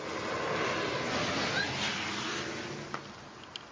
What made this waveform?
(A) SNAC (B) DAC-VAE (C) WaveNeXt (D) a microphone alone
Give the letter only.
D